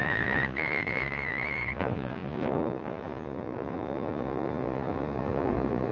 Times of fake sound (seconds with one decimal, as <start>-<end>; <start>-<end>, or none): 0.0-5.9